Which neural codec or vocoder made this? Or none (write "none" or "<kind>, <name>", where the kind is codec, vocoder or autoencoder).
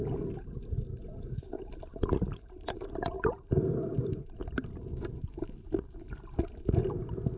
none